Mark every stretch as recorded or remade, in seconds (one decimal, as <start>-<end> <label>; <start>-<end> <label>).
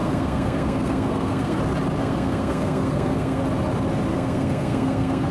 0.0-1.6 remade; 1.6-2.0 recorded; 2.0-3.4 remade; 3.4-4.1 recorded; 4.1-5.3 remade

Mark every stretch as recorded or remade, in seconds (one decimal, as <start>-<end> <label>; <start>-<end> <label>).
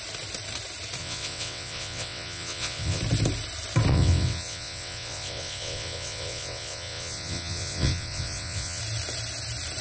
0.0-1.0 recorded; 1.0-3.0 remade; 3.0-3.9 recorded; 3.9-8.8 remade; 8.8-9.8 recorded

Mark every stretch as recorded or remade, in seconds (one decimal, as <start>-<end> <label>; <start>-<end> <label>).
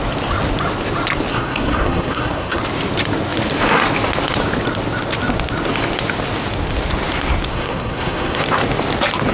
0.0-1.3 recorded; 1.3-2.6 remade; 2.6-7.5 recorded; 7.5-8.4 remade; 8.4-9.3 recorded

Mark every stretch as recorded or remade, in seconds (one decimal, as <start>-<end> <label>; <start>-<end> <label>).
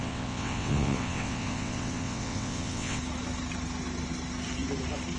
0.0-3.0 remade; 3.0-5.2 recorded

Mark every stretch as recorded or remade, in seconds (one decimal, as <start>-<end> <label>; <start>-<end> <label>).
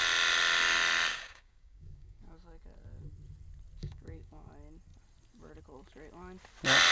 0.0-1.1 recorded; 1.1-2.2 remade; 2.2-3.8 recorded; 3.8-4.5 remade; 4.5-6.9 recorded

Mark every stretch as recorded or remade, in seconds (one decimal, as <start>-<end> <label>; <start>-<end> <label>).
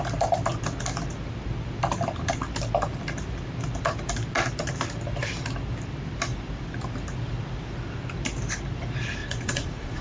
0.0-9.2 recorded; 9.2-10.0 remade